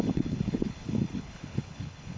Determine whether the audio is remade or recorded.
remade